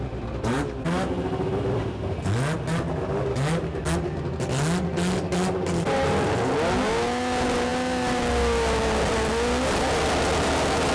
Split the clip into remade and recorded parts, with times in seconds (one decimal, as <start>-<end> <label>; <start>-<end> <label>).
0.0-10.9 recorded